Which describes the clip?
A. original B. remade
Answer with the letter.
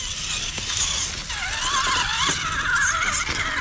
A